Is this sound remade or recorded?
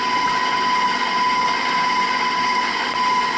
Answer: recorded